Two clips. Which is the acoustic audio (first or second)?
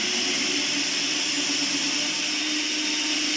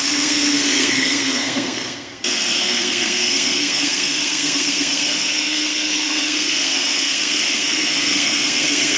first